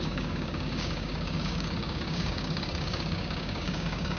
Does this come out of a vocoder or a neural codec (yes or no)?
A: yes